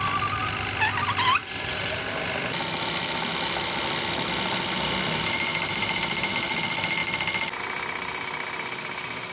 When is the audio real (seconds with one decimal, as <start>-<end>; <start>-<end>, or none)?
0.0-1.4; 2.1-5.5; 6.3-9.3